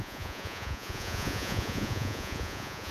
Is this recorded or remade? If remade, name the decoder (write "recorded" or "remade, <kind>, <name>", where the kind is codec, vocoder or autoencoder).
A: remade, vocoder, Vocos